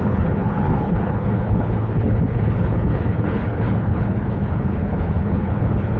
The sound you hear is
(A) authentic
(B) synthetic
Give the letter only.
B